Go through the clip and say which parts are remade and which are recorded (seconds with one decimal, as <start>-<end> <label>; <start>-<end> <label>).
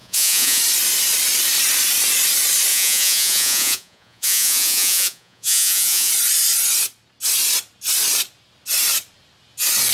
0.0-0.6 remade; 0.6-2.7 recorded; 2.7-6.1 remade; 6.1-9.9 recorded